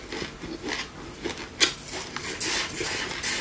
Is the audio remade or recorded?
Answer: recorded